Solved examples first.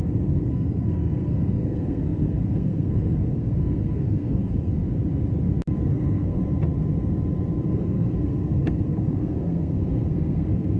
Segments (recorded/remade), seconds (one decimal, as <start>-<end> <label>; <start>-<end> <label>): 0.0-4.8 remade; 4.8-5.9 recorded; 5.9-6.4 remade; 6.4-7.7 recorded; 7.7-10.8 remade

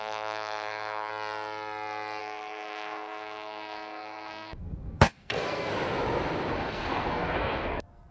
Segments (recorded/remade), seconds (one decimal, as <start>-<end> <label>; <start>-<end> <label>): 0.0-1.1 remade; 1.1-2.2 recorded; 2.2-5.7 remade; 5.7-6.5 recorded; 6.5-8.1 remade

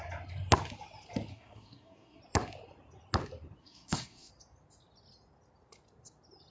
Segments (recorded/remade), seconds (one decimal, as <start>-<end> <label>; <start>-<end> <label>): 0.0-1.3 recorded; 1.3-2.2 remade; 2.2-3.6 recorded; 3.6-4.3 remade; 4.3-6.5 recorded

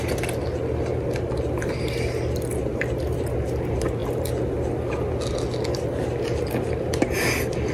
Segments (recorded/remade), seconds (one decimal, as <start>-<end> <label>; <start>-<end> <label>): 0.0-7.7 recorded

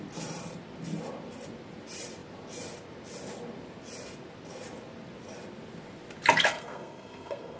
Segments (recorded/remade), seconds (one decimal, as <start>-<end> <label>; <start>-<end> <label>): 0.0-6.5 recorded; 6.5-7.6 remade

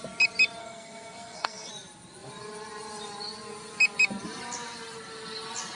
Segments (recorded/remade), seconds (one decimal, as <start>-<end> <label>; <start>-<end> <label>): 0.0-0.6 recorded; 0.6-1.7 remade; 1.7-5.8 recorded